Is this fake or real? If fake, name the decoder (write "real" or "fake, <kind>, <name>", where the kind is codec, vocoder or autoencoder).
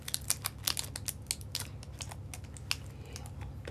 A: real